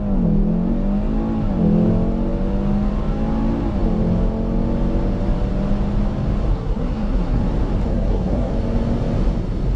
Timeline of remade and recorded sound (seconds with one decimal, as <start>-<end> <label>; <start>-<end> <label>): 0.0-6.5 recorded; 6.5-7.4 remade; 7.4-7.9 recorded; 7.9-8.5 remade; 8.5-9.8 recorded